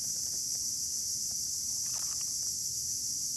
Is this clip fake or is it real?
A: real